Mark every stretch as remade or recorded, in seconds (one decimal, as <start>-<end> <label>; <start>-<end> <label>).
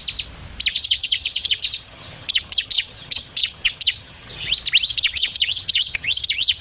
0.0-0.7 recorded; 0.7-4.5 remade; 4.5-4.9 recorded; 4.9-6.6 remade